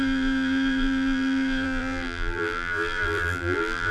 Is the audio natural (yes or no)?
no